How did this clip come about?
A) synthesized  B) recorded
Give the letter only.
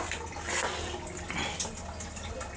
B